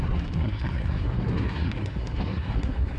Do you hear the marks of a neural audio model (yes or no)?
yes